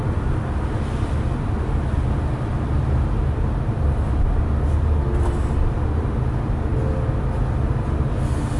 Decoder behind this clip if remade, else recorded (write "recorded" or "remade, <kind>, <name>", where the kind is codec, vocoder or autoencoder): recorded